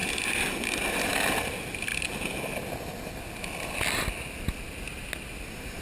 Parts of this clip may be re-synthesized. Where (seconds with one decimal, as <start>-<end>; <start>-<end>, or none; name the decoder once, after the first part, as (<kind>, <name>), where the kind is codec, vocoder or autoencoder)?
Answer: none

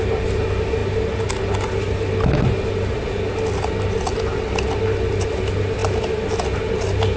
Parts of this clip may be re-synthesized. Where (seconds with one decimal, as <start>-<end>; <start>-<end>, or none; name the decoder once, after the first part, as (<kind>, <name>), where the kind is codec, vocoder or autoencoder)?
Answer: none